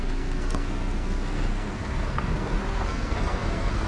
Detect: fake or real fake